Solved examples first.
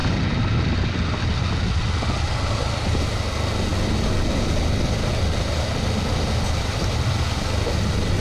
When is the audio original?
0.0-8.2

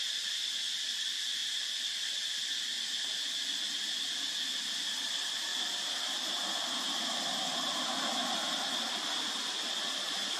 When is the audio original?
0.0-10.4

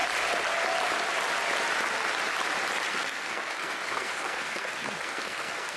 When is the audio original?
0.0-2.9

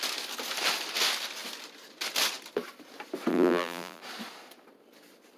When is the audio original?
0.0-3.3; 4.0-5.4

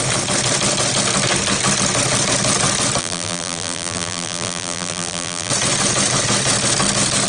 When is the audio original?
0.0-3.0; 5.5-7.3

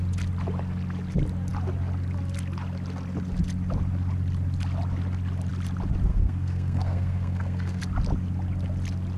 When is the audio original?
0.0-6.1; 7.8-9.2

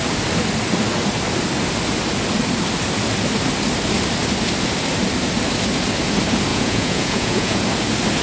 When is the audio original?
0.0-6.5; 7.6-8.2